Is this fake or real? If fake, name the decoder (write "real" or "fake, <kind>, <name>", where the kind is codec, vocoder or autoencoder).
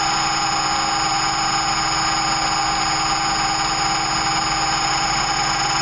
real